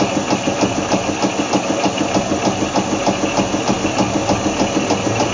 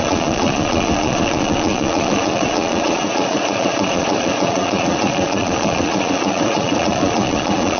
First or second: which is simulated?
second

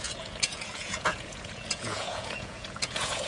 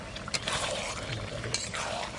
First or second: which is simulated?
first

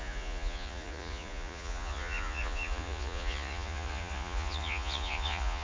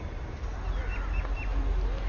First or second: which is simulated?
first